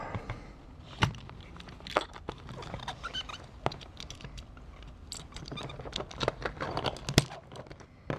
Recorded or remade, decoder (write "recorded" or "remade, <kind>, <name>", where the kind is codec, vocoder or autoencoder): recorded